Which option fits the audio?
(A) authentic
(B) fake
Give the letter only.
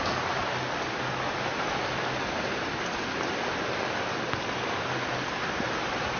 A